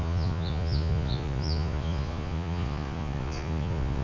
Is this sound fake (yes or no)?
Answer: yes